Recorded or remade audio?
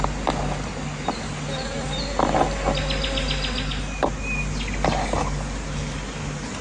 recorded